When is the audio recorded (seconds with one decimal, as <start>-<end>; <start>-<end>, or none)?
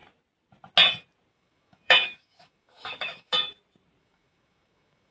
0.0-1.3; 3.3-4.0